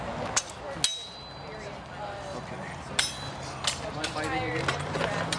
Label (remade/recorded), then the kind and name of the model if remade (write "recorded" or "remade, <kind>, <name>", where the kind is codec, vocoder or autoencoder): recorded